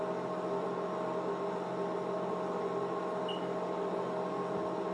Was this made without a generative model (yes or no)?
yes